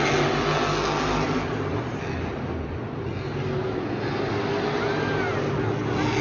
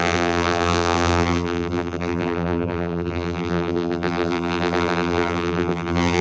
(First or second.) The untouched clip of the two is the first